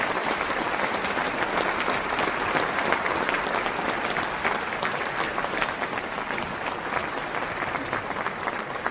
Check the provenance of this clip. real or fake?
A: real